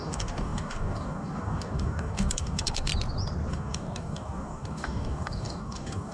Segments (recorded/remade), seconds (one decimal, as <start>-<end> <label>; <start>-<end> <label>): 0.0-2.9 remade; 2.9-3.5 recorded; 3.5-6.1 remade